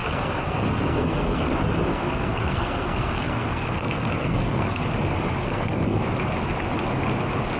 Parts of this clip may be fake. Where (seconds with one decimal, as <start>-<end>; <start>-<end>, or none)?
0.0-1.5; 1.9-4.8; 5.4-6.0